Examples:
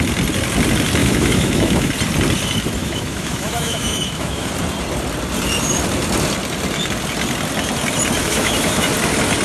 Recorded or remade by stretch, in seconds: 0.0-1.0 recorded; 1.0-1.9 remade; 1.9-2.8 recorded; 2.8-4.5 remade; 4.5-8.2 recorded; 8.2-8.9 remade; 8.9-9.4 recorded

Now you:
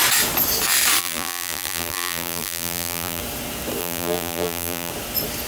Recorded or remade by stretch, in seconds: 0.0-1.0 recorded; 1.0-3.2 remade; 3.2-3.8 recorded; 3.8-4.9 remade; 4.9-5.5 recorded

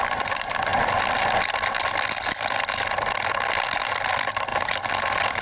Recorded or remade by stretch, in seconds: 0.0-0.7 remade; 0.7-3.9 recorded; 3.9-4.5 remade; 4.5-5.4 recorded